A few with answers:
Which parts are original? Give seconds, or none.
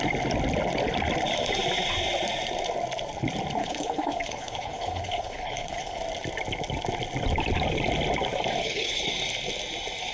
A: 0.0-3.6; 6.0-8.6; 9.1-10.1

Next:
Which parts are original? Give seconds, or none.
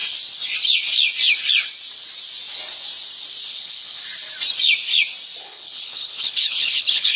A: 0.0-3.5; 4.0-5.4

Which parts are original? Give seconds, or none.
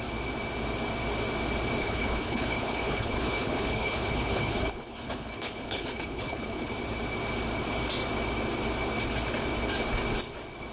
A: 0.0-1.8; 6.7-10.7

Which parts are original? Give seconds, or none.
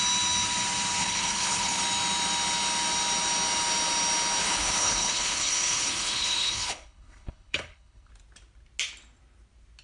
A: 0.0-1.0; 1.8-4.4; 8.1-9.8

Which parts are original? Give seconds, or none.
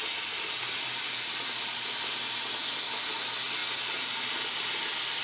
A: 0.0-5.2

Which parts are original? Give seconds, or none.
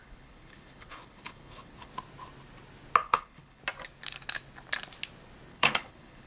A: 1.9-3.0; 3.6-5.5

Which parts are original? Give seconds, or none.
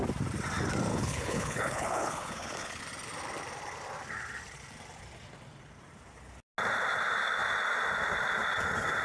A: 0.0-0.9; 2.8-9.0